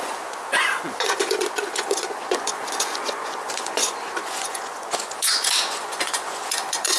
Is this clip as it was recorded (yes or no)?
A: no